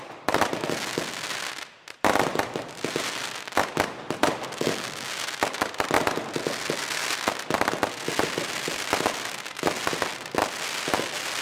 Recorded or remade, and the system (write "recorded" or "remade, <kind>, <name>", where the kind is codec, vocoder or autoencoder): recorded